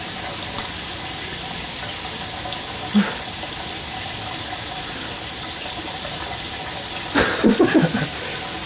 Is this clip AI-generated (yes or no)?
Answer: no